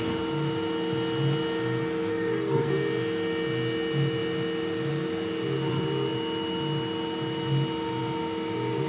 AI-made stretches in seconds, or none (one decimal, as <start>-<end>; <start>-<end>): 2.1-2.7

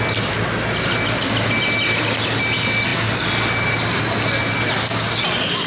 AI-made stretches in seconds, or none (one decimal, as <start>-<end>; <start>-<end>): none

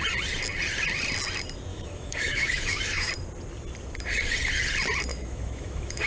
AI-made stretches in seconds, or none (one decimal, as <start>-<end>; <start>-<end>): 1.7-3.1; 5.1-6.1

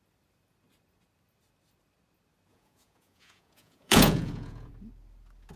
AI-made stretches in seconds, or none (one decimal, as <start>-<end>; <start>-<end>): 2.5-4.7

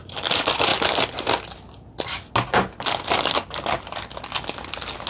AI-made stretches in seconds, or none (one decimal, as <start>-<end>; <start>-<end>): none

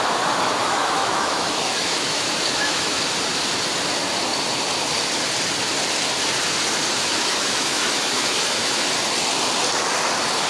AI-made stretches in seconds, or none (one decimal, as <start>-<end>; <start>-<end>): 0.6-3.0; 7.0-8.9